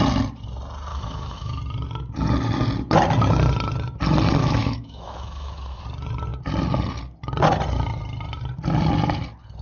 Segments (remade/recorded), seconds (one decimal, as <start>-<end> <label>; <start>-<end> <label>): 0.0-0.9 recorded; 0.9-1.6 remade; 1.6-4.4 recorded; 4.4-5.8 remade; 5.8-9.6 recorded